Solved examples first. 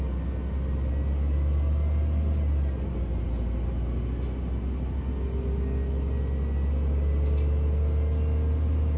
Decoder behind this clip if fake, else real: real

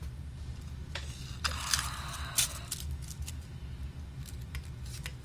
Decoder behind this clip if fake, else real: real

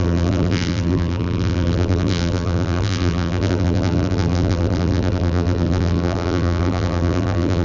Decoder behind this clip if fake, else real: fake, vocoder, BigVGAN v2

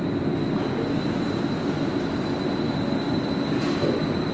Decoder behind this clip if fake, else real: real